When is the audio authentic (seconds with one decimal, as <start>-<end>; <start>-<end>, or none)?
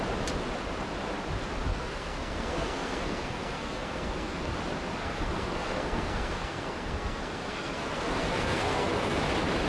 0.0-1.7; 4.5-5.0; 9.2-9.7